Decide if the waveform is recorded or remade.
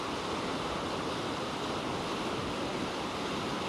recorded